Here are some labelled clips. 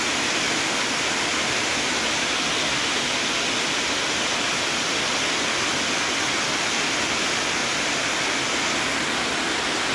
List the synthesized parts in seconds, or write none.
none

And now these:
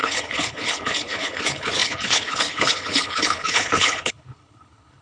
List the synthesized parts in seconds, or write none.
0.0-5.0 (codec, HILCodec)

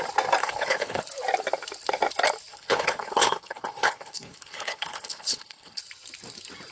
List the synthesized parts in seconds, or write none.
0.4-1.0 (codec, HILCodec); 2.5-5.8

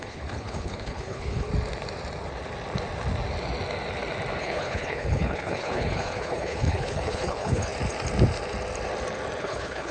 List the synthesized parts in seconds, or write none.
0.0-1.5 (codec, HILCodec); 4.4-7.7; 9.4-9.9

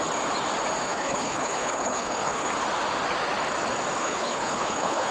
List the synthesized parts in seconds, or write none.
0.8-2.5 (codec, HILCodec); 4.0-5.1

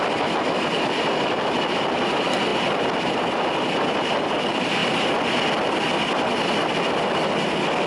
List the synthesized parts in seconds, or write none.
none

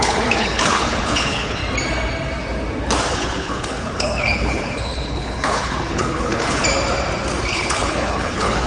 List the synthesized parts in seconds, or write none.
0.0-1.6 (codec, HILCodec); 3.1-6.6; 7.5-8.7